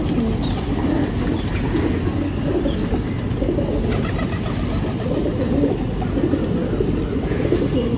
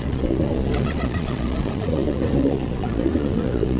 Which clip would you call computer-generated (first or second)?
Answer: second